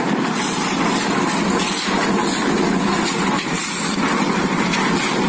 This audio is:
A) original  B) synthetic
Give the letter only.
A